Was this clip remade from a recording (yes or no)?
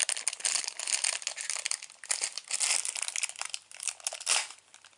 no